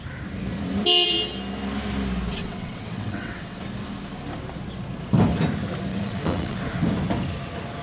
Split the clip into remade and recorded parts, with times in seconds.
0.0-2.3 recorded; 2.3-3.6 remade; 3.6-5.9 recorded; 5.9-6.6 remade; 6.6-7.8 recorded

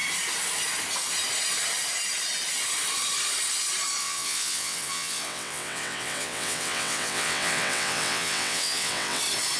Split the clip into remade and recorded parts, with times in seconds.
0.0-4.0 recorded; 4.0-9.2 remade; 9.2-9.6 recorded

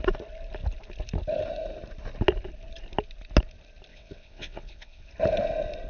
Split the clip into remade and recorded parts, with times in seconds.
0.0-3.9 recorded; 3.9-5.1 remade; 5.1-5.9 recorded

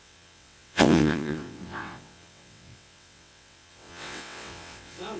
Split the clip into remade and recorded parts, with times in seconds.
0.0-5.2 remade

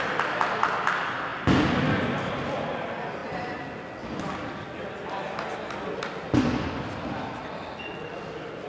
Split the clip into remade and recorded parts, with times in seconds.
0.0-8.7 recorded